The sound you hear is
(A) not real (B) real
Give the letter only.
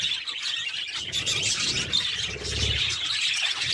B